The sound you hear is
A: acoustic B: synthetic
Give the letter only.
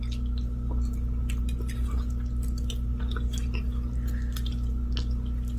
A